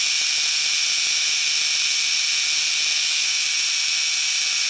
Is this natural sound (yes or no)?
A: yes